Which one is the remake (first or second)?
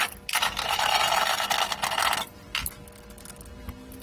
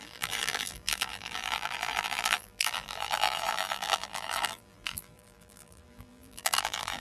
second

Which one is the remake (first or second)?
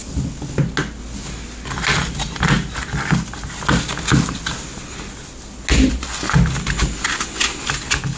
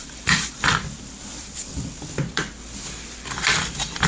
second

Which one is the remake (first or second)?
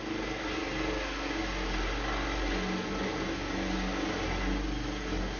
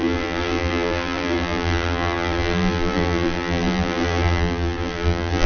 second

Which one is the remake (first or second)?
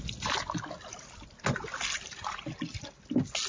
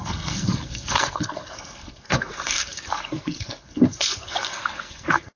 second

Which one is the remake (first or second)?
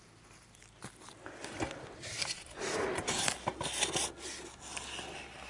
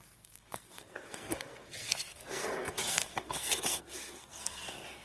second